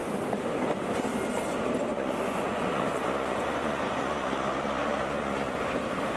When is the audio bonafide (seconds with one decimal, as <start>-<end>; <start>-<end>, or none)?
0.0-1.9; 5.6-6.2